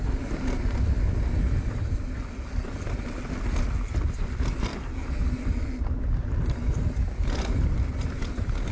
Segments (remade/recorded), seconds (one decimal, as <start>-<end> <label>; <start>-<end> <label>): 0.0-8.7 recorded